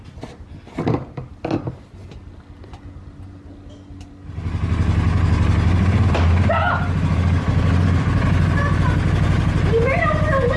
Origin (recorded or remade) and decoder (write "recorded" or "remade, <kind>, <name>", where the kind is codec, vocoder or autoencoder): recorded